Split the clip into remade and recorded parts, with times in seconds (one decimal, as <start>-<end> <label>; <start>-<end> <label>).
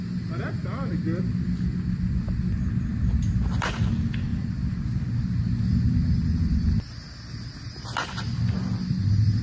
0.0-9.4 recorded